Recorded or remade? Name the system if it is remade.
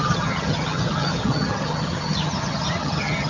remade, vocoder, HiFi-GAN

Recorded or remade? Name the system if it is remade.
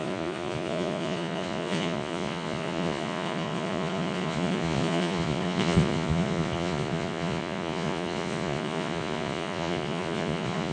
remade, vocoder, Vocos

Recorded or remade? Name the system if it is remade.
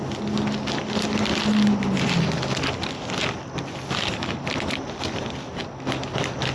recorded